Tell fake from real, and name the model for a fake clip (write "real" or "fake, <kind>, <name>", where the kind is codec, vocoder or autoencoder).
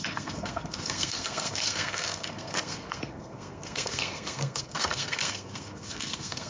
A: fake, codec, SNAC